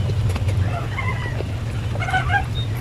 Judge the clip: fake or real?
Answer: fake